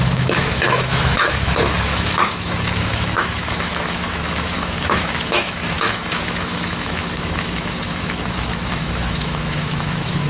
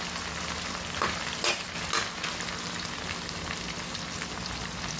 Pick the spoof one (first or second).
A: first